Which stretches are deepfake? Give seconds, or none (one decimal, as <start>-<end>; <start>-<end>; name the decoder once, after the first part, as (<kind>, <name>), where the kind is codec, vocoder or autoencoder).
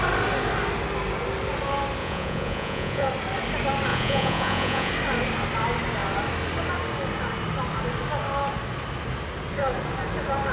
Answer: 2.0-3.1 (vocoder, Vocos); 3.9-4.9